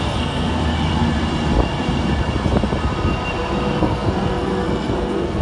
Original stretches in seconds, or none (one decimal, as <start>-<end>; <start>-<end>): 0.6-3.8